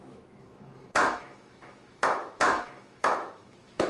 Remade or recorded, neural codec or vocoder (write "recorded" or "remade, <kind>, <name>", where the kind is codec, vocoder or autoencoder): remade, autoencoder, DAC-VAE